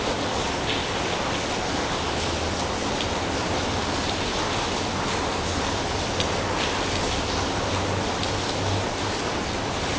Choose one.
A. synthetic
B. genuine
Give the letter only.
B